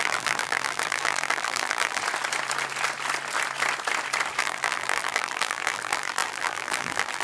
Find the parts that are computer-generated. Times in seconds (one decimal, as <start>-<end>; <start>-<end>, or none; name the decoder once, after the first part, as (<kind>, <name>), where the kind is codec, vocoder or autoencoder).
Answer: 0.0-2.0 (vocoder, BigVGAN v2); 4.4-7.2